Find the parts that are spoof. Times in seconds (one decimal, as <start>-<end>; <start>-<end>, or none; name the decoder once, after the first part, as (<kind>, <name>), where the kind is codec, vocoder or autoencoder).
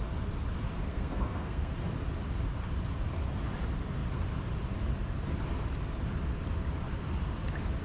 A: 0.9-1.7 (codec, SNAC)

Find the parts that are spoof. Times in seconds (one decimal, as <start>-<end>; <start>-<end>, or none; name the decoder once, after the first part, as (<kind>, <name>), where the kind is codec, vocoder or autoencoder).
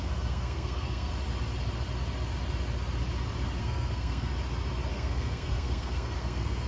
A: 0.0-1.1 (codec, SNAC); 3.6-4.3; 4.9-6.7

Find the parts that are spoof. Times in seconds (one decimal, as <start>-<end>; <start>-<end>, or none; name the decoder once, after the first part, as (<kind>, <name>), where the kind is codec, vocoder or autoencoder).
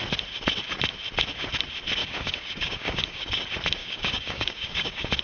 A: 2.0-3.4 (codec, DAC); 3.8-5.2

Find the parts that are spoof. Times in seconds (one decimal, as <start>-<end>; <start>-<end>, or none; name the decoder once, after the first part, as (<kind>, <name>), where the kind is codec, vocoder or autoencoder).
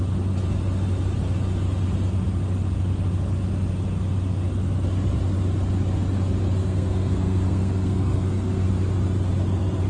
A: 6.6-8.7 (codec, SNAC)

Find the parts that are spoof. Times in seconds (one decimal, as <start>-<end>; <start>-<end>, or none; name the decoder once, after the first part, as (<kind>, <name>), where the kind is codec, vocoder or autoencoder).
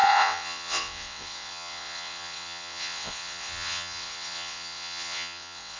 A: 0.0-5.8 (vocoder, WaveNeXt)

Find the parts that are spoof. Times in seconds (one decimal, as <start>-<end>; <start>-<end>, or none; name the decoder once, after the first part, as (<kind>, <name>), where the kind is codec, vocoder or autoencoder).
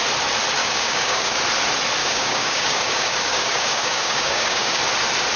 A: 0.6-1.4 (codec, DAC); 2.0-4.8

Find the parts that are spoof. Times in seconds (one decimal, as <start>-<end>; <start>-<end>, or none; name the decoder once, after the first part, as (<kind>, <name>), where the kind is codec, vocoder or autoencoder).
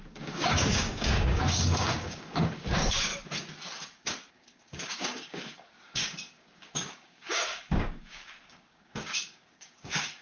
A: 0.0-3.1 (codec, DAC); 4.3-10.2